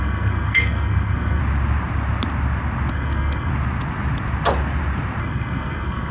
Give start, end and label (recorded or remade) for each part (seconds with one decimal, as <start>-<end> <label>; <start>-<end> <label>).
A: 0.0-1.4 remade; 1.4-2.9 recorded; 2.9-3.5 remade; 3.5-5.2 recorded; 5.2-6.1 remade